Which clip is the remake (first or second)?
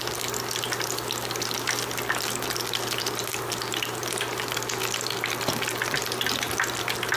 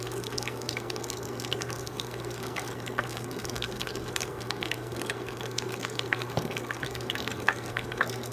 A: second